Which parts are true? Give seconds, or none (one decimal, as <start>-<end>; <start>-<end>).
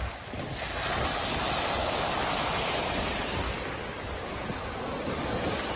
0.0-1.8; 2.8-5.8